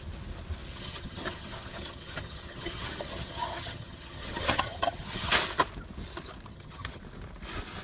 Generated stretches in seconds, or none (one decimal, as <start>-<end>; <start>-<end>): 0.7-5.3; 6.5-7.0